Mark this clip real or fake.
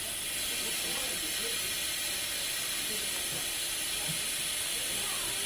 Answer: real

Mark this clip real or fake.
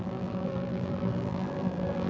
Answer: fake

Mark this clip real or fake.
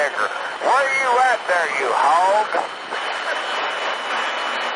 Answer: real